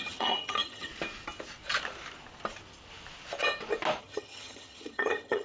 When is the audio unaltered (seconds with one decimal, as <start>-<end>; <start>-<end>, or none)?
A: 0.9-4.0